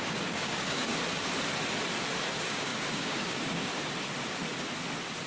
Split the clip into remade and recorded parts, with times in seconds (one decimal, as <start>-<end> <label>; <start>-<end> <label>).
0.0-0.9 remade; 0.9-2.3 recorded; 2.3-3.7 remade; 3.7-5.3 recorded